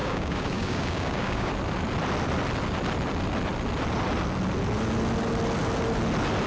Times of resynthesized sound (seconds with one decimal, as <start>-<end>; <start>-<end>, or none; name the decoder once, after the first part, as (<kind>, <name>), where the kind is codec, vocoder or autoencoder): 0.0-1.5 (codec, DAC)